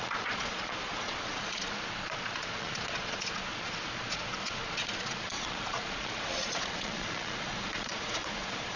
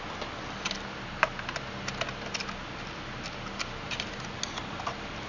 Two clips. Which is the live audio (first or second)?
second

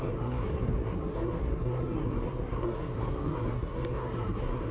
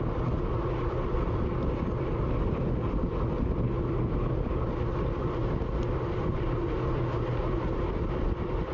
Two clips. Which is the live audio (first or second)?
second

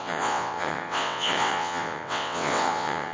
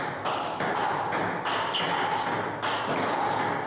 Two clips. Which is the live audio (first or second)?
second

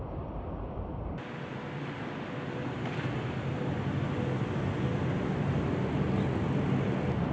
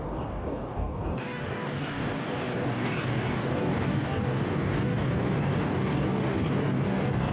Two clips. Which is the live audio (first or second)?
first